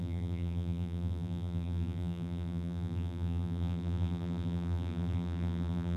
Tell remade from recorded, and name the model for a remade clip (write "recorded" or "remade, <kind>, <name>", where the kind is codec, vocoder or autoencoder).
remade, vocoder, BigVGAN v2